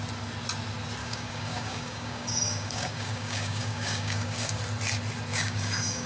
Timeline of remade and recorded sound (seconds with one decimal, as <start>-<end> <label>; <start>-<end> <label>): 0.0-1.0 recorded; 1.0-4.6 remade; 4.6-5.3 recorded; 5.3-6.1 remade